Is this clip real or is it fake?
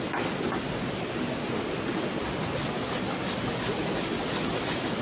real